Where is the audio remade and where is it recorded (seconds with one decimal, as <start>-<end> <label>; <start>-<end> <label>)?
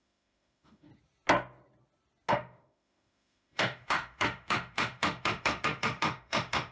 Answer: 0.0-0.9 remade; 0.9-2.3 recorded; 2.3-6.7 remade